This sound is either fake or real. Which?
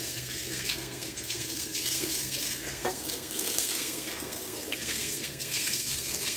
fake